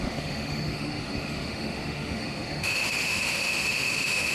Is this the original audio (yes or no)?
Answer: no